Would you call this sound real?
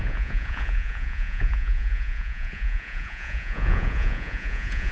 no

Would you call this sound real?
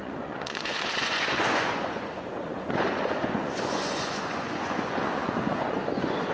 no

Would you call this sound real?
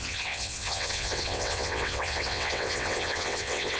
no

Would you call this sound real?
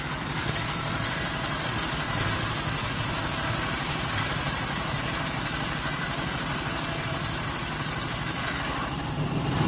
no